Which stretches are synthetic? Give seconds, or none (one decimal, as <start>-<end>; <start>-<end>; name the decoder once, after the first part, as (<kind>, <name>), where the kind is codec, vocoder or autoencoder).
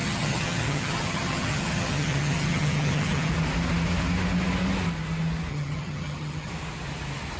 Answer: 0.0-3.3 (vocoder, HiFi-GAN); 5.5-6.5